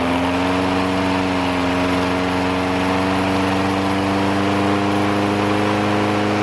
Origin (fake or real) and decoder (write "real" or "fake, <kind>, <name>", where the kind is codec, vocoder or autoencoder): real